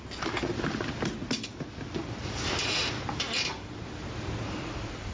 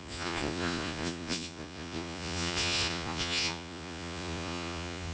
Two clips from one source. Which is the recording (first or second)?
first